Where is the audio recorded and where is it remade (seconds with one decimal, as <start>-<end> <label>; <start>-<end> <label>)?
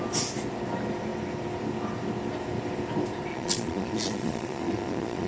0.0-3.3 recorded; 3.3-5.3 remade